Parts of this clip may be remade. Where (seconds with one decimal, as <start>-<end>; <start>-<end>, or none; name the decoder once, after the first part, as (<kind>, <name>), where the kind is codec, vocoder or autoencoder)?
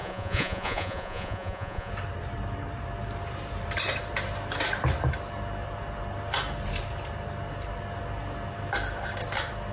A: 0.0-1.9 (vocoder, Vocos)